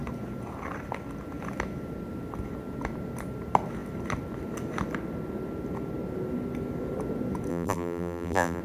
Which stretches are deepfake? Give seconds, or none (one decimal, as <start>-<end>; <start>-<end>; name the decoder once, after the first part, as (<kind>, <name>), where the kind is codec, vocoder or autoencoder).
7.5-8.6 (vocoder, BigVGAN v2)